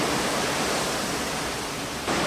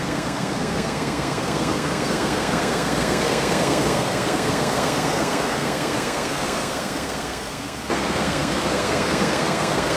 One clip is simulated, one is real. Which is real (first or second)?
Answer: first